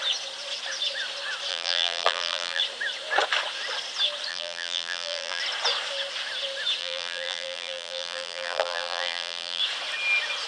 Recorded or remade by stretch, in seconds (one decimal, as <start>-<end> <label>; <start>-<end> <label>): 0.0-1.5 recorded; 1.5-2.6 remade; 2.6-4.3 recorded; 4.3-5.4 remade; 5.4-6.8 recorded; 6.8-9.6 remade; 9.6-10.5 recorded